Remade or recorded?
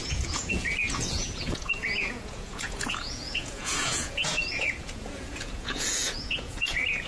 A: remade